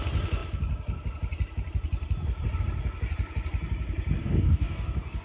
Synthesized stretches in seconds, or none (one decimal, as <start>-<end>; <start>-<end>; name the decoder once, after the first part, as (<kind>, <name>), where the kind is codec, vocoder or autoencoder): 4.2-5.2 (codec, DAC)